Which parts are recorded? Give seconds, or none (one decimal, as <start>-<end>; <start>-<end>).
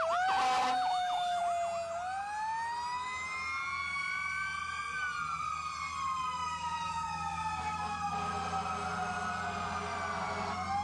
0.0-0.9; 1.4-6.4; 8.0-10.8